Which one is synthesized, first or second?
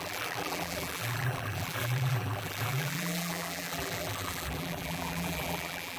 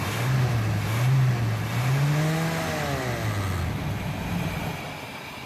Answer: first